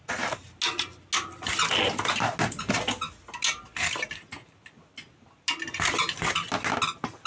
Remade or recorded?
recorded